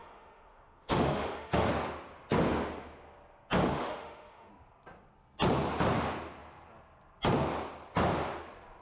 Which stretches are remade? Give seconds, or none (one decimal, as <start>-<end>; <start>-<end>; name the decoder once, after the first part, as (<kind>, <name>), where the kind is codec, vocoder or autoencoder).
0.0-1.7 (autoencoder, DAC-VAE); 3.6-4.5